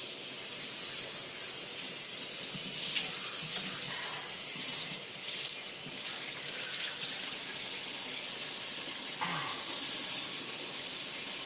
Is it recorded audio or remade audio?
recorded